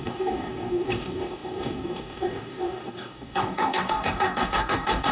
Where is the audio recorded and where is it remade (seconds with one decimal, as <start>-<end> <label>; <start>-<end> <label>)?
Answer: 0.0-5.1 remade